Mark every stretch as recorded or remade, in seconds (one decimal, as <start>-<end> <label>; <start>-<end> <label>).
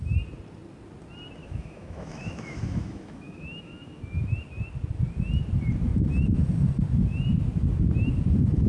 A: 0.0-1.4 recorded; 1.4-4.0 remade; 4.0-8.7 recorded